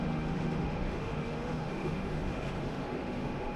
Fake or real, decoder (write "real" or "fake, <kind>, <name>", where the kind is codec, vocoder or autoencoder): fake, autoencoder, DAC-VAE